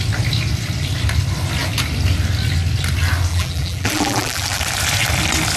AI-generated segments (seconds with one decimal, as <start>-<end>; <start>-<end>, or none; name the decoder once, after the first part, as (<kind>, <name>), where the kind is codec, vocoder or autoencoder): 3.3-4.6 (vocoder, BigVGAN v2)